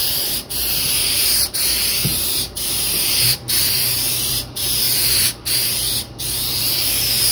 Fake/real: fake